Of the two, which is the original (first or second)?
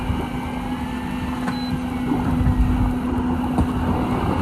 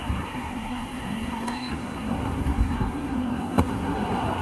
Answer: first